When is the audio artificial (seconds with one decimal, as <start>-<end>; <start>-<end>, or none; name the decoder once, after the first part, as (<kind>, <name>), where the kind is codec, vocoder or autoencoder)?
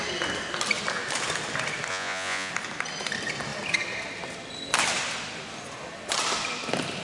1.9-2.5 (vocoder, Vocos)